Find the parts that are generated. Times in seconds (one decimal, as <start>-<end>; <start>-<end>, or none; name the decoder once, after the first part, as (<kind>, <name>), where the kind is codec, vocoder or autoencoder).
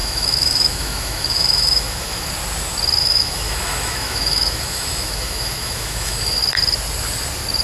0.0-2.3 (autoencoder, DAC-VAE); 3.0-6.4